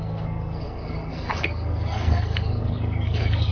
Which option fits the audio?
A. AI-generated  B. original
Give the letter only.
A